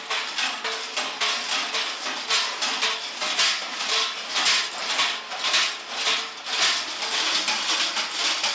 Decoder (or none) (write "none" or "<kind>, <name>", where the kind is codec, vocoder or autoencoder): none